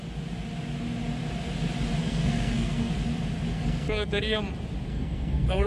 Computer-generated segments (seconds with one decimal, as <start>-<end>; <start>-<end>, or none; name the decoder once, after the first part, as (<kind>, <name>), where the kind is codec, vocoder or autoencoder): 2.0-2.9 (codec, SNAC); 3.5-4.4; 4.9-5.7